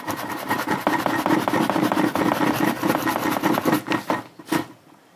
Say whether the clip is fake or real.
real